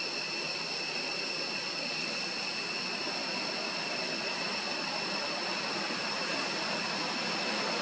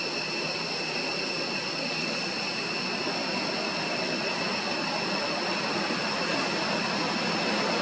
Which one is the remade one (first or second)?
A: first